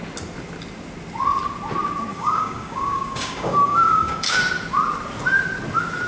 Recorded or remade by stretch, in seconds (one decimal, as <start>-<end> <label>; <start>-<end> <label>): 0.0-2.1 recorded; 2.1-4.4 remade; 4.4-6.1 recorded